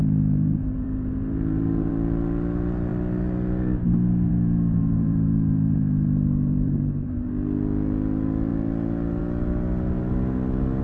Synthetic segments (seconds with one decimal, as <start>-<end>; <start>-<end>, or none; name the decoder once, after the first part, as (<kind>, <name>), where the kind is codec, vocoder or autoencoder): 0.0-1.9 (vocoder, BigVGAN v2); 4.7-7.3